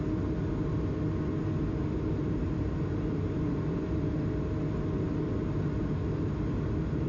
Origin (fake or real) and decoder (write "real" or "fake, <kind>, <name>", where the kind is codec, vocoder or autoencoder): real